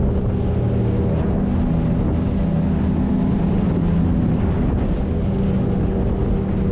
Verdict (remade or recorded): recorded